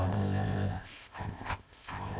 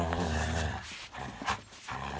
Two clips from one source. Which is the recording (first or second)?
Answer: second